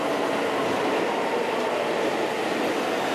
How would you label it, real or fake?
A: real